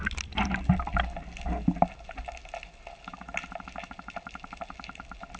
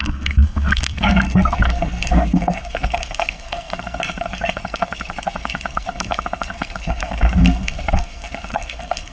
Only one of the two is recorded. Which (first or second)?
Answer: first